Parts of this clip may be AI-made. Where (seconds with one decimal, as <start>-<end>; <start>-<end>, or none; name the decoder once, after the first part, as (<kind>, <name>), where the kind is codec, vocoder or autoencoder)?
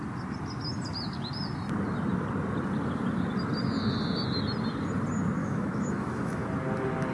5.4-6.4 (autoencoder, DAC-VAE)